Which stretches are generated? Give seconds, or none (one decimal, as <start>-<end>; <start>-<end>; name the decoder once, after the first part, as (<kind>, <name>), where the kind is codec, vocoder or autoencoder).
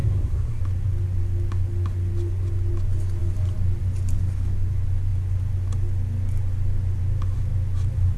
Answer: 0.0-0.6 (codec, SNAC)